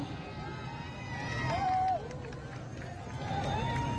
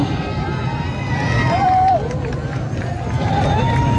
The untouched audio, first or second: first